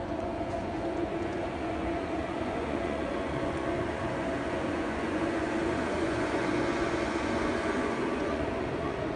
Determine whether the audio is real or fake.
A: fake